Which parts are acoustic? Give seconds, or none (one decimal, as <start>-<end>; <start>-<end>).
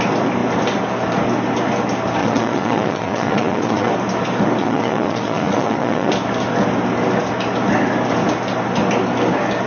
0.0-2.2; 3.9-4.6; 6.1-9.7